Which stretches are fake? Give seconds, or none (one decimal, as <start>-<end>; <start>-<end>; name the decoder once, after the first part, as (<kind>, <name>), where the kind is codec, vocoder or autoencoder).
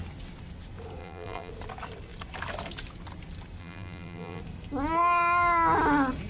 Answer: 1.0-1.5 (vocoder, BigVGAN v2); 3.6-4.4